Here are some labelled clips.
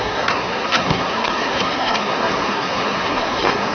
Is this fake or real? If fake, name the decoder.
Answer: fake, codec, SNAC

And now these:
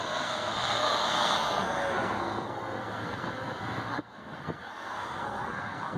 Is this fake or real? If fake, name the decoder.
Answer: fake, codec, SNAC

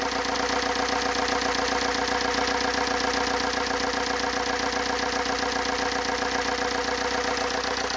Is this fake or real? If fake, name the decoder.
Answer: real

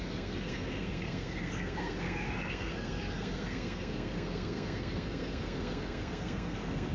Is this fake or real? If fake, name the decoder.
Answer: fake, codec, SNAC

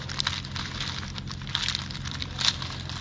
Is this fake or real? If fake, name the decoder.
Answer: real